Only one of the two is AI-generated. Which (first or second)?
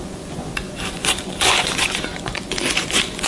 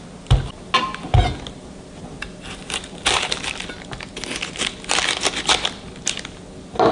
first